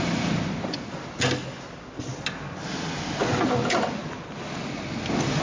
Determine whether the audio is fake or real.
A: real